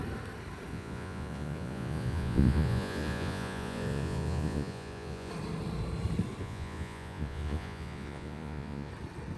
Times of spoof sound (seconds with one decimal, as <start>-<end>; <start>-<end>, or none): 0.7-5.3; 6.4-8.9